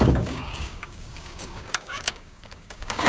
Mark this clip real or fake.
fake